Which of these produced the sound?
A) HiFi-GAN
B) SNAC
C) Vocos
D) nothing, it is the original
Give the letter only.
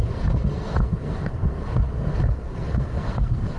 B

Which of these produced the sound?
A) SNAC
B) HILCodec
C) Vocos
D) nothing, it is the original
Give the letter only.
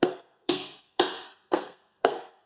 A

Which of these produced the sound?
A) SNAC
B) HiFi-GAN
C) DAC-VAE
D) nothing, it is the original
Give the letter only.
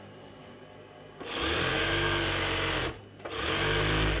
D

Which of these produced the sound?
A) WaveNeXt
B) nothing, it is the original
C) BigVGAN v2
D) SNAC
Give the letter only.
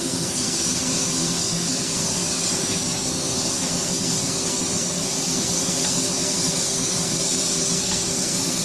D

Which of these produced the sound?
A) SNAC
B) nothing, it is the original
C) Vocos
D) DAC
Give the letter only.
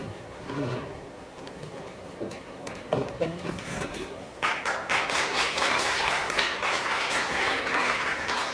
A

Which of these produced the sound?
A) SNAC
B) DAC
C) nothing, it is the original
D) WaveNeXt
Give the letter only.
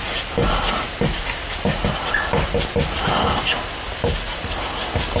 C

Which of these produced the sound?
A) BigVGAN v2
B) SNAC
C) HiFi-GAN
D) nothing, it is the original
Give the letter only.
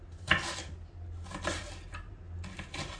D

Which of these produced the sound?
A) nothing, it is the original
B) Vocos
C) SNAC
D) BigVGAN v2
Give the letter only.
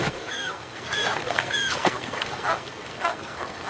C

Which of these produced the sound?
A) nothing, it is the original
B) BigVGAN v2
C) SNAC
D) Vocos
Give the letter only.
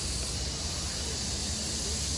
A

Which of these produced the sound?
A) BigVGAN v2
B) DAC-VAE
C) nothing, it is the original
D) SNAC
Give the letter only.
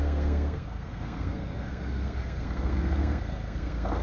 D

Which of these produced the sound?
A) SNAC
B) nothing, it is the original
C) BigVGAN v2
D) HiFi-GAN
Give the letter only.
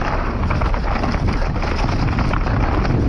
B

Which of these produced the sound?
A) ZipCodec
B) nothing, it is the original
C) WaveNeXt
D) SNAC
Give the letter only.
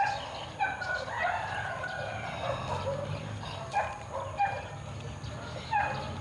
B